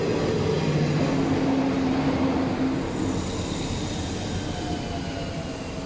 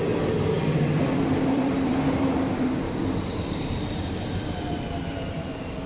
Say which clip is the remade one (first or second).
second